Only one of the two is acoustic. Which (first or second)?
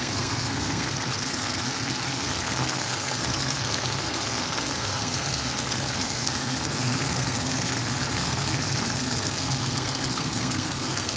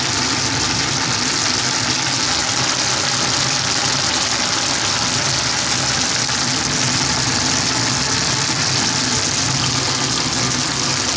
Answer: second